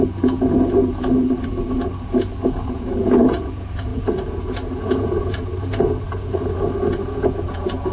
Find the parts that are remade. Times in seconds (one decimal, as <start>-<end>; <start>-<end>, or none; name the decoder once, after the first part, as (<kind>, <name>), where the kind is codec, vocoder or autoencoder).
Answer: 0.0-7.9 (vocoder, Vocos)